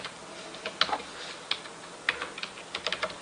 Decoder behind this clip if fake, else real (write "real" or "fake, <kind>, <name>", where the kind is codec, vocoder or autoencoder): real